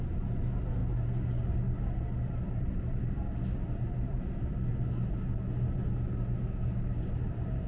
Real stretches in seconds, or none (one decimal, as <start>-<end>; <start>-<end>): 0.0-7.7